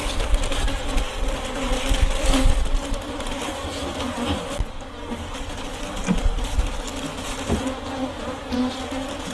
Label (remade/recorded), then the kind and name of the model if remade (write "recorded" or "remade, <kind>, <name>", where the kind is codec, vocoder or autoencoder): recorded